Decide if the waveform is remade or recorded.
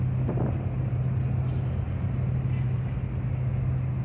recorded